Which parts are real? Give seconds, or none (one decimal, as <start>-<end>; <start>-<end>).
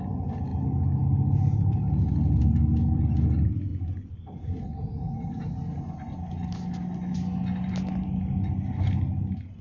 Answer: 0.0-9.6